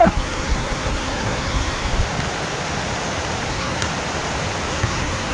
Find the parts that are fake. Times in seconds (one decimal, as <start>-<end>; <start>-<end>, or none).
0.0-1.9; 3.5-3.9; 4.7-5.3